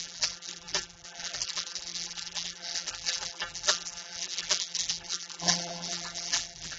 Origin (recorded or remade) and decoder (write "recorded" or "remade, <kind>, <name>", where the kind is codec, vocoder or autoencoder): remade, vocoder, BigVGAN v2